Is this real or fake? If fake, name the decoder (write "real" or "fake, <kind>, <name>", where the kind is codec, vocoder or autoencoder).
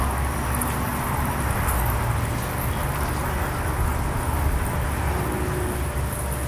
real